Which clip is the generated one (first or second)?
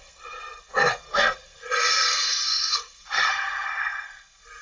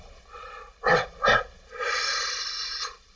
first